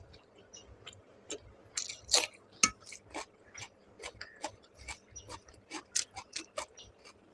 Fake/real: real